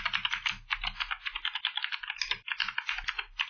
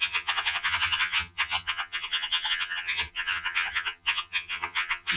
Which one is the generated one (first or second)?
second